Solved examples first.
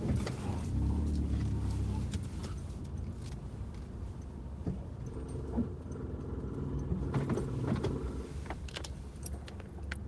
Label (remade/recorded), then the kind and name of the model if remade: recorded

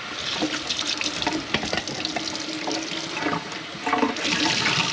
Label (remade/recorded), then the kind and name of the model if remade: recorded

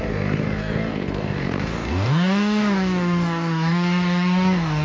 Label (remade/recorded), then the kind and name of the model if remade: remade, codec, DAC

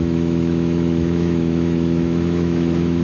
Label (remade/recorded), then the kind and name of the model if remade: remade, autoencoder, DAC-VAE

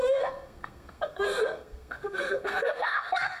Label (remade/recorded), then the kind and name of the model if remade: remade, codec, SNAC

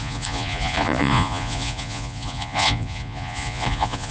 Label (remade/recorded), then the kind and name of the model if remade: remade, vocoder, Vocos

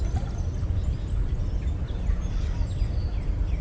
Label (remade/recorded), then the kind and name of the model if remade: recorded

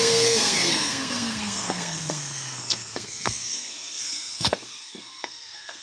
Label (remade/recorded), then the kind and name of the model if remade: remade, codec, SNAC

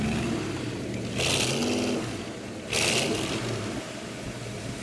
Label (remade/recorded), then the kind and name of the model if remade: recorded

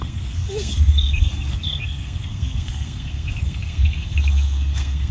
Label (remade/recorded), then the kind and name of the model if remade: remade, codec, SNAC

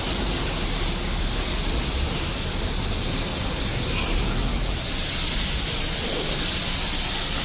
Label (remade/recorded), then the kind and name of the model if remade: recorded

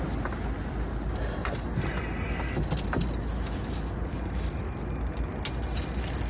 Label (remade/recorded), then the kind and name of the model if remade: recorded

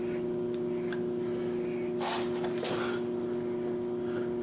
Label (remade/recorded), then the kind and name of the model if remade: recorded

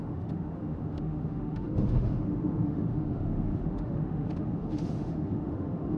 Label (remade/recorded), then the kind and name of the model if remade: remade, autoencoder, DAC-VAE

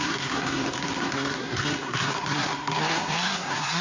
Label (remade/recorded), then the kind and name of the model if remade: remade, codec, SNAC